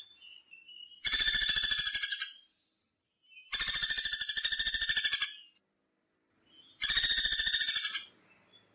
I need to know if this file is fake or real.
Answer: real